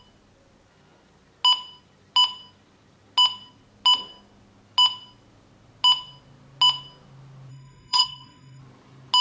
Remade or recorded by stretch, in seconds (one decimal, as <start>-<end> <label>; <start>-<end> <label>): 0.0-7.5 recorded; 7.5-8.6 remade; 8.6-9.2 recorded

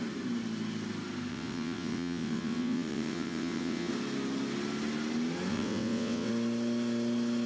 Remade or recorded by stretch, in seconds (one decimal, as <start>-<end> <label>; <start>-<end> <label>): 0.0-1.3 recorded; 1.3-3.9 remade; 3.9-5.5 recorded; 5.5-6.3 remade; 6.3-7.5 recorded

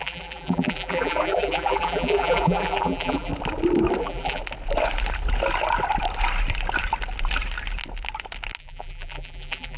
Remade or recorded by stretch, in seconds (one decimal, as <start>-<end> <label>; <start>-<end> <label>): 0.0-3.3 remade; 3.3-4.0 recorded; 4.0-4.4 remade; 4.4-8.6 recorded; 8.6-9.8 remade